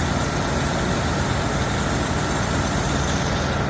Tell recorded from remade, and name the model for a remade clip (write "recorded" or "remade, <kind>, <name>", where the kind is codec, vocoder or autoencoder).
remade, vocoder, BigVGAN v2